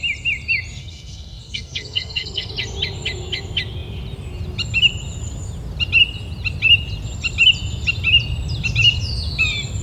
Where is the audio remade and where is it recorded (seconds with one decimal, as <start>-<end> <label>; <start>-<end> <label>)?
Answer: 0.0-0.8 recorded; 0.8-2.5 remade; 2.5-9.8 recorded